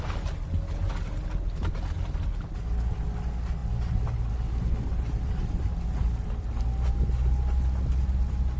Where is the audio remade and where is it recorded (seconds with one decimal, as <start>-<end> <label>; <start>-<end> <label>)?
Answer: 0.0-8.6 recorded